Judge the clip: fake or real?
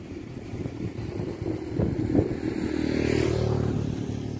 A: real